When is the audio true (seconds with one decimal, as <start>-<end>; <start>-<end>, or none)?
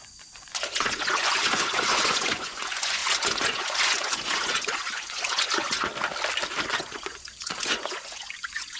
5.9-6.7